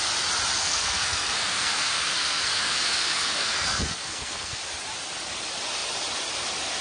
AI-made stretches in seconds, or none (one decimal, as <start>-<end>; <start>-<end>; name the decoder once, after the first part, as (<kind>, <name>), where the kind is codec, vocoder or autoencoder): 0.6-4.6 (codec, SNAC)